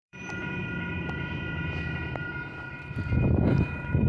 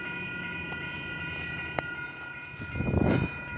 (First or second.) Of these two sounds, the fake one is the first